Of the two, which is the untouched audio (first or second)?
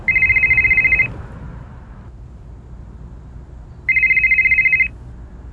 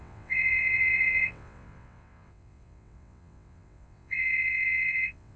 first